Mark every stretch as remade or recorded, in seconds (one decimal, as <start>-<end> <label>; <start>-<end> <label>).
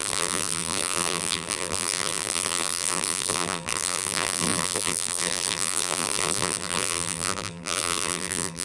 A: 0.0-8.6 remade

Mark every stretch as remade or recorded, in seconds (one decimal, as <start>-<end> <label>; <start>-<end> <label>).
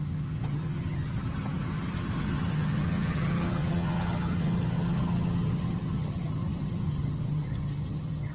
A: 0.0-8.3 remade